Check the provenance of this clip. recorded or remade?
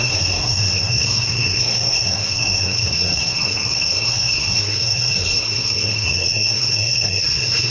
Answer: remade